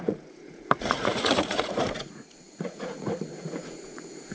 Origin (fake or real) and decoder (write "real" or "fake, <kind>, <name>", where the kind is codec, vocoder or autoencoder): fake, vocoder, Vocos